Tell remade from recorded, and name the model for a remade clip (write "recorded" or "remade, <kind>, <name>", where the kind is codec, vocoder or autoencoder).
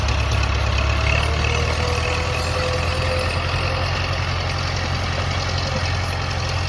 recorded